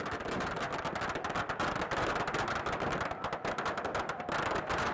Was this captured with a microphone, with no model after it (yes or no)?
yes